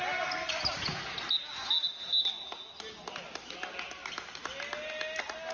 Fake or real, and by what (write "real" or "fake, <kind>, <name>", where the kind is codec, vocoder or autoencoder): real